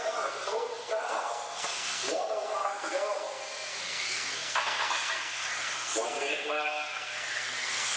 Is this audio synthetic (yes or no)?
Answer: yes